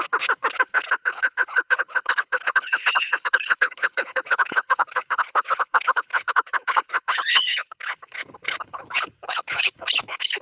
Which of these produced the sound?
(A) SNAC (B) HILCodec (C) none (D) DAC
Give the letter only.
B